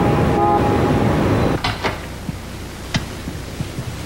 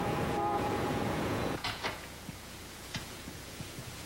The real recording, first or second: first